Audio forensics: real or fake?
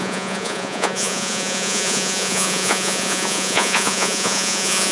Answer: fake